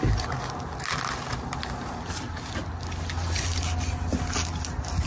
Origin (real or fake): real